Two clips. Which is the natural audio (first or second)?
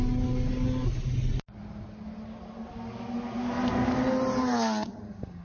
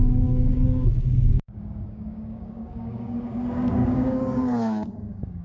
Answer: first